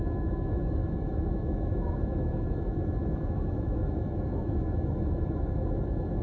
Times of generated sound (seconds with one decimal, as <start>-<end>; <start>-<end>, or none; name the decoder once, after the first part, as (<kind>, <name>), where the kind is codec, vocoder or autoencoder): 0.0-6.2 (autoencoder, DAC-VAE)